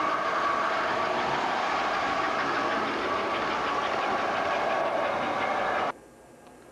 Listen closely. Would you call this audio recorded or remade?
recorded